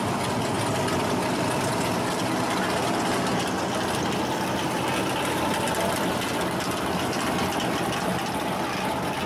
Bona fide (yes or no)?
yes